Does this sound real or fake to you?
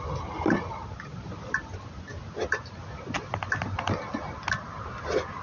real